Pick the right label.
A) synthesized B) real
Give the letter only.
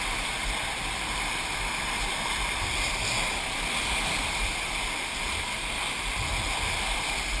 B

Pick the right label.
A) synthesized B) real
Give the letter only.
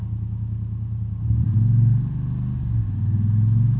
B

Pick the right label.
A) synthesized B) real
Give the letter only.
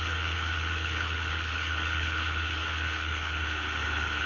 A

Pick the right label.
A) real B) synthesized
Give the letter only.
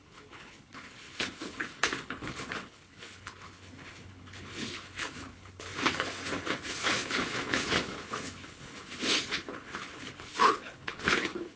B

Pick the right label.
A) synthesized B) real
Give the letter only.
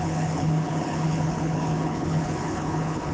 A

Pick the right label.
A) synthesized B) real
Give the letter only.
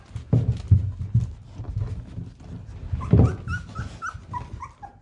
B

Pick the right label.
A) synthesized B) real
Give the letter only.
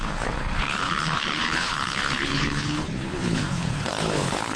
A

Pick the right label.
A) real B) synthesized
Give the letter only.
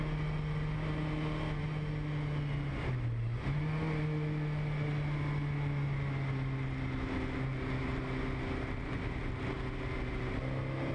A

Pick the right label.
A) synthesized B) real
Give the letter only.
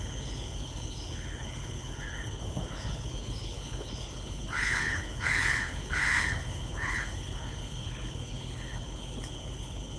A